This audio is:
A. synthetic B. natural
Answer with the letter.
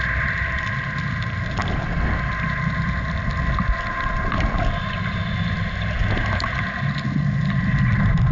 B